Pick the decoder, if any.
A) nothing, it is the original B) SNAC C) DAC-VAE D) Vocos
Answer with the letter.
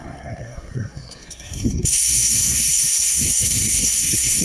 B